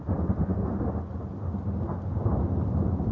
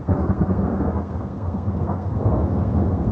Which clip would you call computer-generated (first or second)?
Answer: second